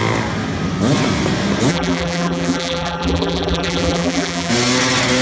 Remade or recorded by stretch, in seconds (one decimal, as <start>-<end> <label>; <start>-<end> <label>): 0.0-1.7 recorded; 1.7-4.5 remade; 4.5-5.2 recorded